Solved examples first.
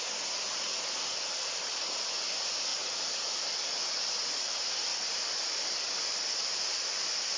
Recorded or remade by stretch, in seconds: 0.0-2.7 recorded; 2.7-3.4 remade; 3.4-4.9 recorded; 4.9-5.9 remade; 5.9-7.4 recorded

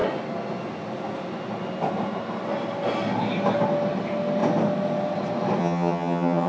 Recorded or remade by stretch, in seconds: 0.0-5.6 recorded; 5.6-6.5 remade

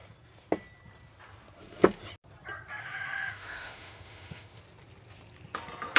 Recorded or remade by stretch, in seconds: 0.0-2.8 recorded; 2.8-4.6 remade; 4.6-6.0 recorded

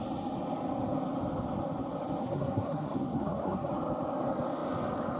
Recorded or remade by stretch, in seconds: 0.0-2.2 recorded; 2.2-3.7 remade; 3.7-5.2 recorded

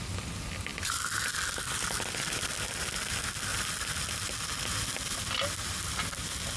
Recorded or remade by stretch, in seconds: 0.0-0.7 recorded; 0.7-2.8 remade; 2.8-6.6 recorded

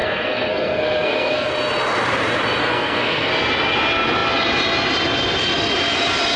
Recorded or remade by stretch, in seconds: 0.0-1.5 remade; 1.5-2.6 recorded; 2.6-3.3 remade; 3.3-6.4 recorded